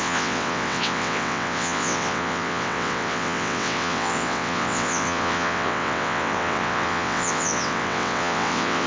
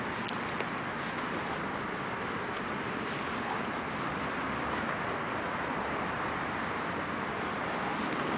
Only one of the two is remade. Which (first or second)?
first